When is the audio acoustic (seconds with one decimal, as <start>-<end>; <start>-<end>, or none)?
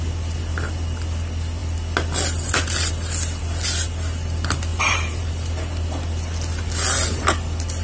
0.0-4.7; 5.3-7.8